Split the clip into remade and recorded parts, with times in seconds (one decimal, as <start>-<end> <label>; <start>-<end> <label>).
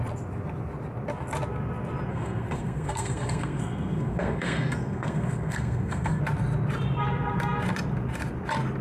0.0-2.1 recorded; 2.1-6.2 remade; 6.2-8.8 recorded